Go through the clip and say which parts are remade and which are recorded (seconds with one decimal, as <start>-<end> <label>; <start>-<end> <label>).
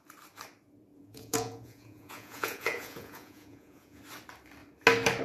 0.0-0.9 recorded; 0.9-4.0 remade; 4.0-5.2 recorded